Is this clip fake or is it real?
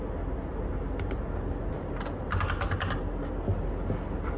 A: real